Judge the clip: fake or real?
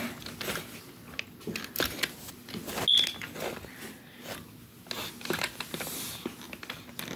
real